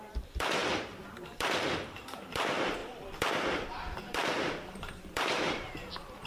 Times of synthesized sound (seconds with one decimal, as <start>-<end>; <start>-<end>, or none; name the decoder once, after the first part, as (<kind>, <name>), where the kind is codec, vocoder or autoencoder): 0.0-2.8 (vocoder, BigVGAN v2); 4.0-6.3